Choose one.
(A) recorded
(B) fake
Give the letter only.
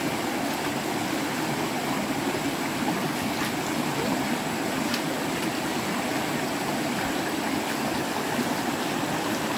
A